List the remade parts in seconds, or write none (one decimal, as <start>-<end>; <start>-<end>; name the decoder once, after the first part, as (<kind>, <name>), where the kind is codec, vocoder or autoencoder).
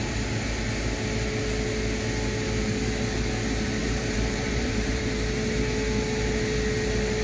3.8-5.0 (vocoder, BigVGAN v2)